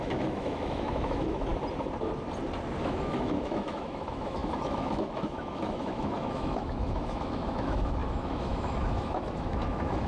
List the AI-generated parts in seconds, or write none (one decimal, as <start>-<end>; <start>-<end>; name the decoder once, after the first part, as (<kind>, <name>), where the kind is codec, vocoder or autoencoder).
0.0-1.5 (autoencoder, DAC-VAE); 2.8-10.1